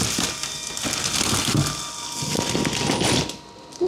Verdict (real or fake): real